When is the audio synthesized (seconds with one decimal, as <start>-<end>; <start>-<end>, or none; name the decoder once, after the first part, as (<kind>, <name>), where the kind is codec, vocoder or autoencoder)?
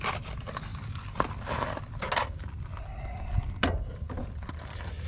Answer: none